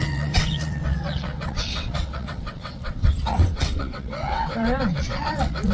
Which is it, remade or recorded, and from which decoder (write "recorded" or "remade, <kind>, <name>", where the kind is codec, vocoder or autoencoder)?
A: remade, vocoder, WaveNeXt